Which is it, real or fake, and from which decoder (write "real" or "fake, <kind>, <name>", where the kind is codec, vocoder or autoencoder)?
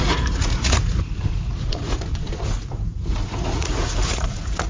fake, vocoder, Vocos